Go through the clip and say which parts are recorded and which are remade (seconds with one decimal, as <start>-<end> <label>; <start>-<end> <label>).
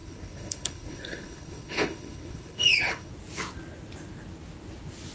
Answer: 0.0-3.1 remade; 3.1-5.1 recorded